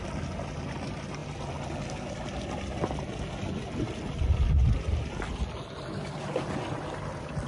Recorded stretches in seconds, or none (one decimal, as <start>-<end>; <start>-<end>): 0.0-7.5